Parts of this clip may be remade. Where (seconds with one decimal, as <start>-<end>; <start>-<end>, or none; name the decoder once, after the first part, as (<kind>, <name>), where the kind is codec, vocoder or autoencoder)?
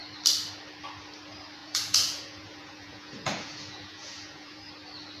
1.6-4.7 (vocoder, Vocos)